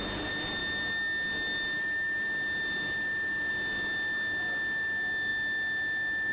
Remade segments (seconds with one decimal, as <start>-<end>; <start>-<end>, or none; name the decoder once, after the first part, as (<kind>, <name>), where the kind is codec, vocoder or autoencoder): none